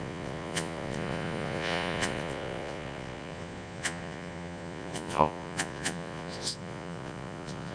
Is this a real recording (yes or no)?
no